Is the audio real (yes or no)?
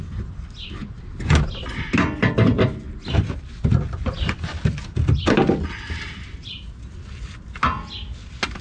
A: yes